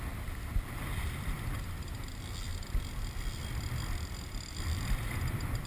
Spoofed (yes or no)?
no